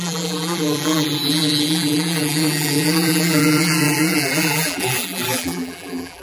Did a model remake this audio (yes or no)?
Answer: yes